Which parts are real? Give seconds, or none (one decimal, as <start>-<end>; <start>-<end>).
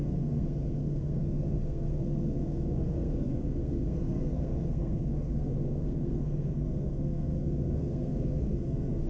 none